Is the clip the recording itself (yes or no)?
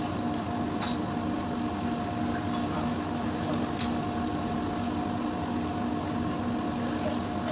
yes